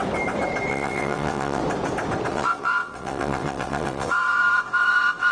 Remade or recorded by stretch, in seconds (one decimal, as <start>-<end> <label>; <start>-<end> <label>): 0.0-0.7 recorded; 0.7-1.6 remade; 1.6-2.3 recorded; 2.3-5.3 remade